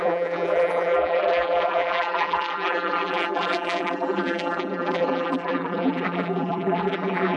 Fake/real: fake